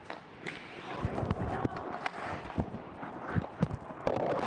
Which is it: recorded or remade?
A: recorded